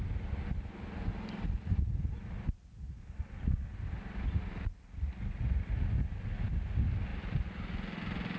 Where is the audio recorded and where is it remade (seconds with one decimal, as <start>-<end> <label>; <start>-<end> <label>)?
0.0-7.1 recorded; 7.1-7.7 remade; 7.7-8.4 recorded